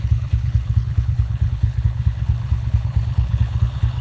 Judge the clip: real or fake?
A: fake